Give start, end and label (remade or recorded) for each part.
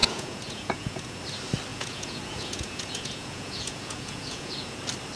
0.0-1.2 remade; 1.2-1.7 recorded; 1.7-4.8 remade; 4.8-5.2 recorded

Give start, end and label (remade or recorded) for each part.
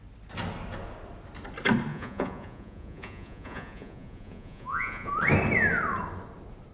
0.0-1.9 recorded; 1.9-5.1 remade; 5.1-6.7 recorded